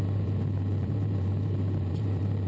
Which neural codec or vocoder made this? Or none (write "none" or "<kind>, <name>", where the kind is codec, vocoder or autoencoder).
vocoder, BigVGAN v2